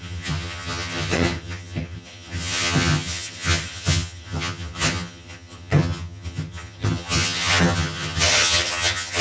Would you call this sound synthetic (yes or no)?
yes